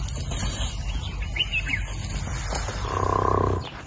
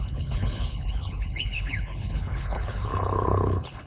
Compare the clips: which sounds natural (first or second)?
first